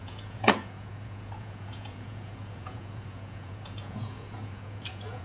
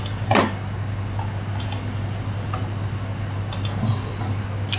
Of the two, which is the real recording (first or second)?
second